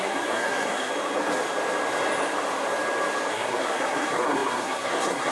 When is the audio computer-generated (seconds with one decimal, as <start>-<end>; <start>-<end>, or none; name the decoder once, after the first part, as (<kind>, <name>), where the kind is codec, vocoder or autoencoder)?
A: 0.0-0.9 (codec, SNAC); 3.3-5.3